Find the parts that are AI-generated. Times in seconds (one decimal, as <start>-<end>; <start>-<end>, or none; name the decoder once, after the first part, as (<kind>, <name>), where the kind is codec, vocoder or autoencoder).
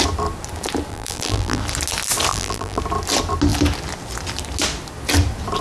0.9-1.6 (vocoder, BigVGAN v2); 2.3-2.8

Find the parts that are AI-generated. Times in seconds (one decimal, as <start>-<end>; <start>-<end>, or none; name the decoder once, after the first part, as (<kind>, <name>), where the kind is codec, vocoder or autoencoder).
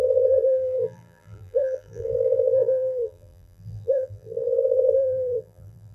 0.0-5.9 (vocoder, BigVGAN v2)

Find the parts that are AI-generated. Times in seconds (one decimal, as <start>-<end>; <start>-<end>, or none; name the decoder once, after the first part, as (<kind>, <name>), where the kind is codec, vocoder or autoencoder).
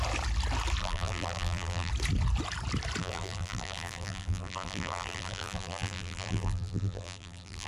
0.8-1.9 (vocoder, BigVGAN v2); 3.0-7.7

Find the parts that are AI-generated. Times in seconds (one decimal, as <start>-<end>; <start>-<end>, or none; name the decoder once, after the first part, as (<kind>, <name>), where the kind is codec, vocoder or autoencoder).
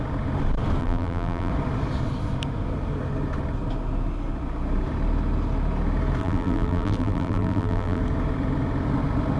0.8-1.5 (vocoder, BigVGAN v2); 6.2-8.0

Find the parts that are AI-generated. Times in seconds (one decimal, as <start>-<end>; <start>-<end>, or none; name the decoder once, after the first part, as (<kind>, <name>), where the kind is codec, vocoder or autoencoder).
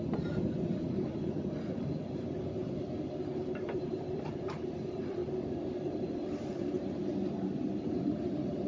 0.0-2.6 (vocoder, BigVGAN v2); 3.3-5.2; 6.0-7.0; 7.8-8.7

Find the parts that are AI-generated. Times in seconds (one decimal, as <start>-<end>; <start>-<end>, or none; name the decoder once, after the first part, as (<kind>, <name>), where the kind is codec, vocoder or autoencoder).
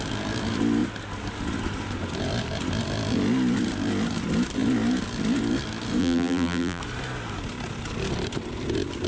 6.0-6.8 (vocoder, BigVGAN v2)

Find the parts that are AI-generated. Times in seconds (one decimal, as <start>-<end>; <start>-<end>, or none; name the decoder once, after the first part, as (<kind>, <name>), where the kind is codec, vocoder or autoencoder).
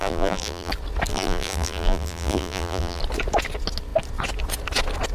0.0-0.7 (vocoder, BigVGAN v2); 1.1-3.0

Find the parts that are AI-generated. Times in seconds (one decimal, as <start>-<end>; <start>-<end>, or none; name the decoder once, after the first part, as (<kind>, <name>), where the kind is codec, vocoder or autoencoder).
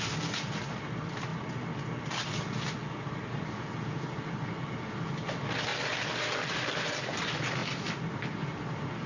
none